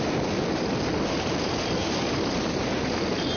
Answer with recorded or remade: recorded